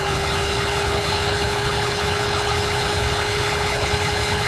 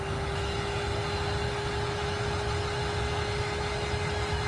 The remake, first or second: first